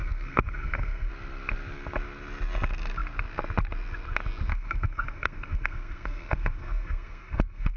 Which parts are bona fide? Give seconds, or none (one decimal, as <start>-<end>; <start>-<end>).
1.1-4.5